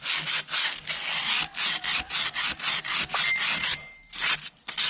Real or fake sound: real